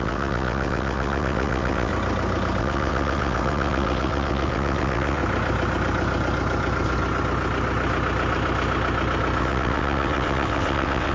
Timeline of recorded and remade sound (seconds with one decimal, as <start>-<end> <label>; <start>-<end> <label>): 0.0-1.9 remade; 1.9-2.6 recorded; 2.6-5.2 remade; 5.2-9.4 recorded; 9.4-11.1 remade